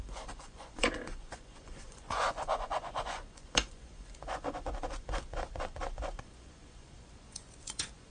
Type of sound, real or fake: fake